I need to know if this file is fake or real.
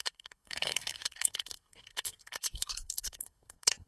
fake